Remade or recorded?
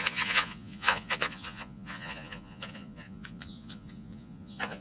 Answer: remade